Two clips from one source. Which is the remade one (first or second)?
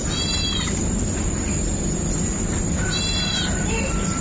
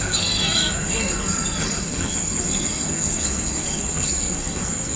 second